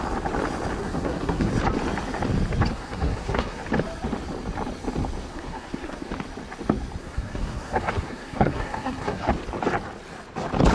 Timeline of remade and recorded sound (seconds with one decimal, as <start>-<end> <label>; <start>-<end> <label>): 0.0-0.8 recorded; 0.8-1.5 remade; 1.5-2.7 recorded; 2.7-3.6 remade; 3.6-5.3 recorded; 5.3-6.1 remade; 6.1-7.0 recorded; 7.0-9.3 remade; 9.3-10.7 recorded